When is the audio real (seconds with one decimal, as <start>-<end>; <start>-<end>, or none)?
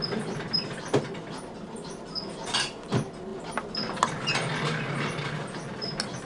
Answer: 0.0-6.3